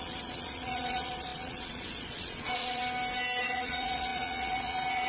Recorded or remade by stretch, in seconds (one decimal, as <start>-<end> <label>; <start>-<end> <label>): 0.0-2.8 remade; 2.8-3.4 recorded; 3.4-5.1 remade